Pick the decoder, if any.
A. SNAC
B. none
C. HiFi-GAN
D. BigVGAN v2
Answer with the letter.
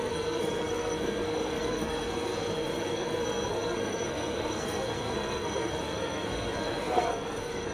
A